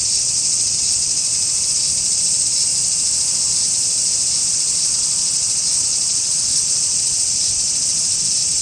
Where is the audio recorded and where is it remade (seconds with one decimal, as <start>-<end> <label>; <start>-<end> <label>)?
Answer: 0.0-1.3 remade; 1.3-2.1 recorded; 2.1-2.7 remade; 2.7-4.5 recorded; 4.5-8.6 remade